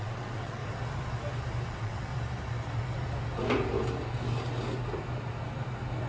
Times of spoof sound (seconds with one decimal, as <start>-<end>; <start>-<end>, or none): 0.0-0.6; 1.7-2.1